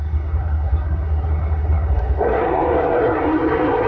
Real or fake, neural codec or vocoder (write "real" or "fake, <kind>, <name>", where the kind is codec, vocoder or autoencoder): fake, codec, SNAC